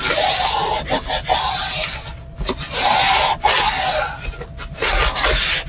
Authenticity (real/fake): real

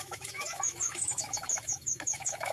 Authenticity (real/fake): fake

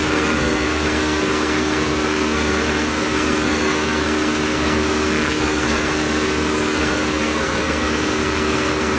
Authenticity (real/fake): fake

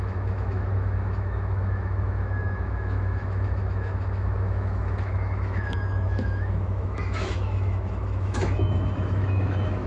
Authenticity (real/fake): fake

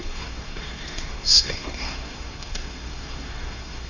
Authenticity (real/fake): fake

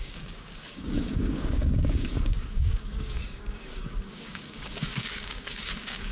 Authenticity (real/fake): fake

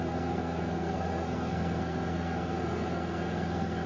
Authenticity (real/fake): fake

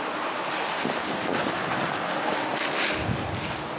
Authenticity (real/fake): real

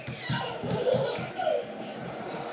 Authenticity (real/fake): real